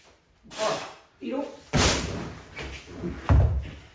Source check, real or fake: real